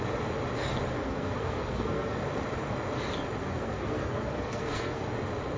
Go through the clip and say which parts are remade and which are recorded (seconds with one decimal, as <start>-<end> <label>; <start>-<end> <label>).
0.0-0.9 recorded; 0.9-2.2 remade; 2.2-3.4 recorded; 3.4-5.1 remade; 5.1-5.6 recorded

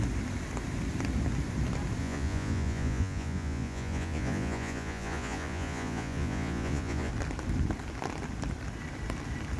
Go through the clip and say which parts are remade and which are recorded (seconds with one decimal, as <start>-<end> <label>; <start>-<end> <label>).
0.0-2.0 recorded; 2.0-7.1 remade; 7.1-9.6 recorded

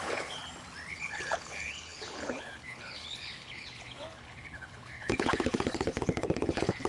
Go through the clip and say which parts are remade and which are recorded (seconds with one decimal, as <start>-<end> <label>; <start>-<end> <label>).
0.0-0.4 remade; 0.4-0.9 recorded; 0.9-6.9 remade

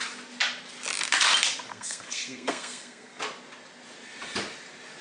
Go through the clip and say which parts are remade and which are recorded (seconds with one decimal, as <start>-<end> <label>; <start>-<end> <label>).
0.0-1.7 recorded; 1.7-3.2 remade; 3.2-5.0 recorded

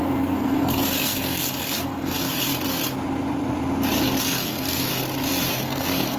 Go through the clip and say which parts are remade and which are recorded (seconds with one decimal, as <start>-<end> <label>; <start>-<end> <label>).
0.0-2.5 remade; 2.5-4.2 recorded; 4.2-4.9 remade; 4.9-5.5 recorded; 5.5-6.2 remade

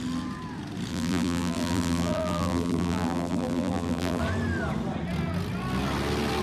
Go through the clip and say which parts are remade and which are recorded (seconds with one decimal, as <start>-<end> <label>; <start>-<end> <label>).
0.0-0.9 recorded; 0.9-4.2 remade; 4.2-6.4 recorded

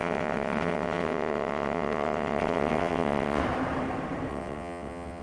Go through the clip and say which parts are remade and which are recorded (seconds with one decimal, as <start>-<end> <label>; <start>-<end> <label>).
0.0-3.4 remade; 3.4-4.3 recorded; 4.3-5.2 remade

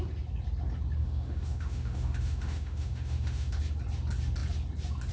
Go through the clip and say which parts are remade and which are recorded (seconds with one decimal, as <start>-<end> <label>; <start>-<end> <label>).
0.0-1.0 recorded; 1.0-3.6 remade; 3.6-5.1 recorded